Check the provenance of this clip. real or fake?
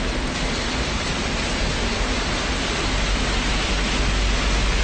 real